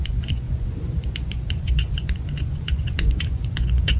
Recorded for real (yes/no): no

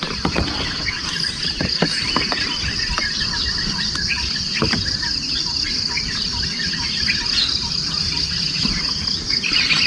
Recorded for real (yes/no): yes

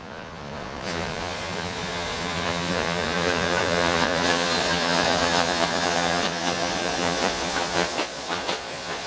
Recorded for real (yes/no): no